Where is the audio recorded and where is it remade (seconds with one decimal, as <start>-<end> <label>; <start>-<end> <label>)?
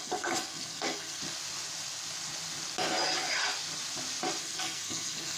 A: 0.0-1.2 remade; 1.2-4.4 recorded; 4.4-5.4 remade